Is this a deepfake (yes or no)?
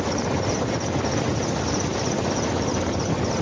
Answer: no